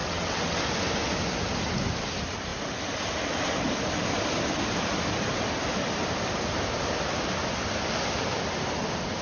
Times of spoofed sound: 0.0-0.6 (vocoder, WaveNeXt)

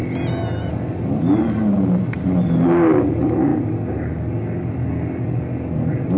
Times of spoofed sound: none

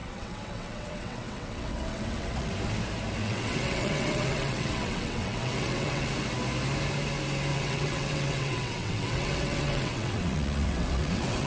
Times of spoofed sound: 0.0-2.5 (vocoder, WaveNeXt); 3.2-6.1; 7.5-11.5

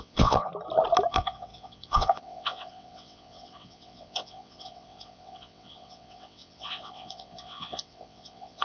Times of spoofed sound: 0.0-0.5 (vocoder, WaveNeXt); 1.1-8.6